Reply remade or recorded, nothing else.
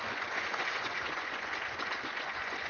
remade